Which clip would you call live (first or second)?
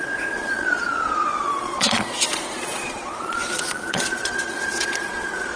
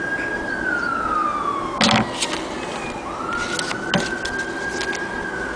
second